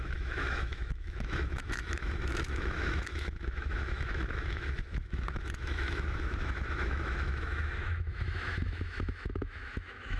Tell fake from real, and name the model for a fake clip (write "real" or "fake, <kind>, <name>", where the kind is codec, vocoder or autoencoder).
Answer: fake, autoencoder, DAC-VAE